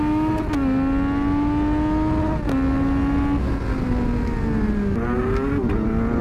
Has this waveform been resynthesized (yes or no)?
no